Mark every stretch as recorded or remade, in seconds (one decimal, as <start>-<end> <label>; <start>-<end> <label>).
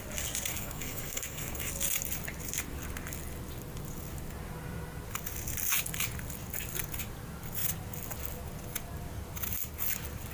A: 0.0-0.5 recorded; 0.5-1.7 remade; 1.7-10.3 recorded